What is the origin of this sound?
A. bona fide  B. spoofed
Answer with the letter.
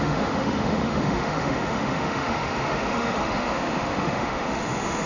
B